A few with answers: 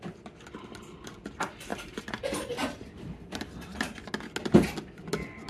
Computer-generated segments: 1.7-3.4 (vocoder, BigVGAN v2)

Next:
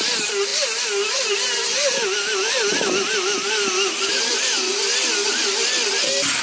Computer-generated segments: none

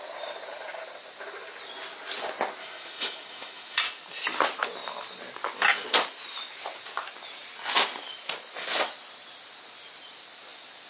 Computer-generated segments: 2.6-3.8 (autoencoder, DAC-VAE)

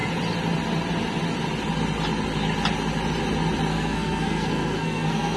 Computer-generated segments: 3.7-5.4 (codec, SNAC)